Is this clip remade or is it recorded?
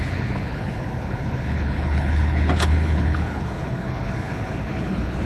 remade